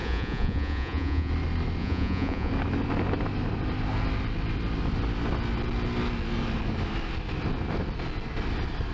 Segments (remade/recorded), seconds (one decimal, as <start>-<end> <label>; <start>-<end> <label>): 0.0-1.3 remade; 1.3-1.8 recorded; 1.8-2.5 remade; 2.5-8.9 recorded